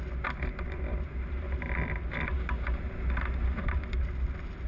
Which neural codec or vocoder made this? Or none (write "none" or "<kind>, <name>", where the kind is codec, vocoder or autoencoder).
none